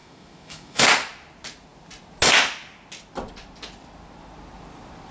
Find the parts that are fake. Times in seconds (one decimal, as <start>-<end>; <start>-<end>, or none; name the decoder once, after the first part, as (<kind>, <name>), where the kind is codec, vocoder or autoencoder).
0.0-0.8 (autoencoder, DAC-VAE)